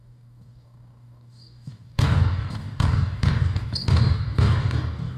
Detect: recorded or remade remade